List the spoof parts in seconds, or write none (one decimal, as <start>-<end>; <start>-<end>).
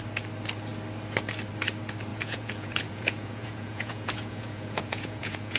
2.1-5.6